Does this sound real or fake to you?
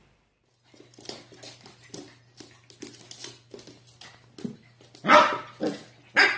real